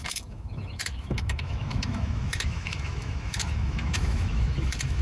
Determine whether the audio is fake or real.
fake